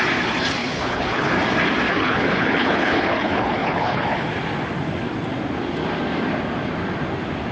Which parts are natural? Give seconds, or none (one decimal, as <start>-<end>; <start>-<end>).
0.0-0.6; 1.3-1.9; 4.3-7.5